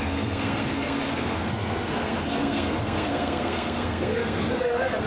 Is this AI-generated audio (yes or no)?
yes